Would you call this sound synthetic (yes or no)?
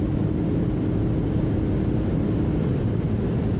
no